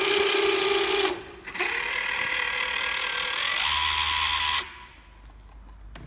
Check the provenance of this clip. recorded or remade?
recorded